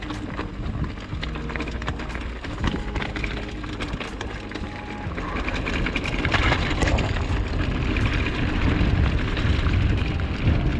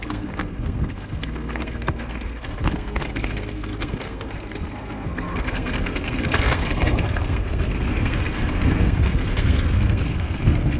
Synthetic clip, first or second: second